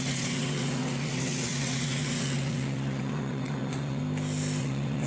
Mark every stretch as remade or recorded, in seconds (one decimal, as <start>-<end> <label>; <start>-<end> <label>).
0.0-4.0 remade; 4.0-4.6 recorded; 4.6-5.1 remade